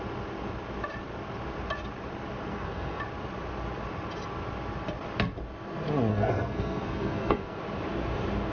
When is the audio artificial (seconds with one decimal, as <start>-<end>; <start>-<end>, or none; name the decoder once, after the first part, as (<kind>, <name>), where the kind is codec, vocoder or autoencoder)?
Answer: 2.5-3.0 (codec, SNAC); 6.1-7.6